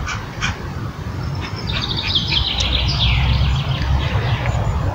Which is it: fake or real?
real